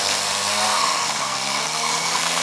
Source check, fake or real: fake